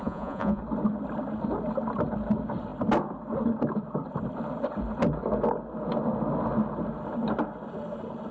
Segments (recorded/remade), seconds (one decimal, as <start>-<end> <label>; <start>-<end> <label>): 0.0-0.6 remade; 0.6-8.3 recorded

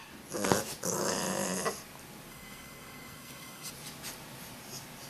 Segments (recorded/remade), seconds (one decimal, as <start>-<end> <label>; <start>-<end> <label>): 0.0-2.3 recorded; 2.3-3.7 remade; 3.7-5.1 recorded

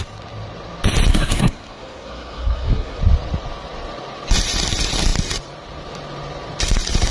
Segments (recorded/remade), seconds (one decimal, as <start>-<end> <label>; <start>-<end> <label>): 0.0-1.1 recorded; 1.1-3.0 remade; 3.0-7.1 recorded

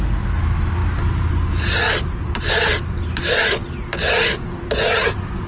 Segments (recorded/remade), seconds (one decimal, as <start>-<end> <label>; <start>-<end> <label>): 0.0-5.5 recorded

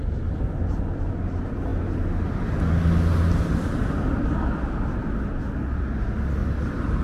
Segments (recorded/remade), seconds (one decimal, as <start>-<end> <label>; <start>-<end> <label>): 0.0-6.4 recorded; 6.4-7.0 remade